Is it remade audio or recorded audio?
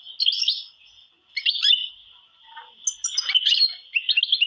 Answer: recorded